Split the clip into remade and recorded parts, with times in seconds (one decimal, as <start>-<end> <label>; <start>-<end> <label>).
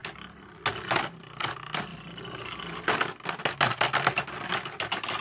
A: 0.0-5.2 recorded